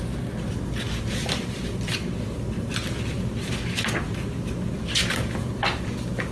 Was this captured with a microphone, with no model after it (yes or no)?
yes